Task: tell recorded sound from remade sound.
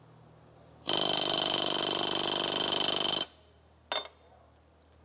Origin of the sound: recorded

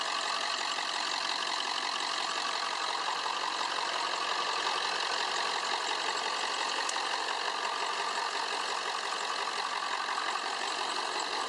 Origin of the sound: recorded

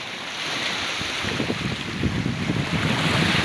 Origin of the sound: recorded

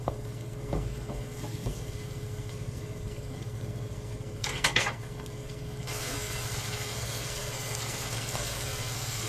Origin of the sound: remade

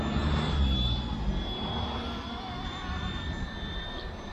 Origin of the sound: recorded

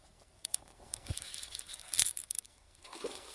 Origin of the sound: remade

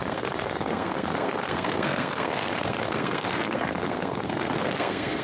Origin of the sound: remade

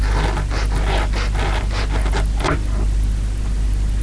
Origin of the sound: recorded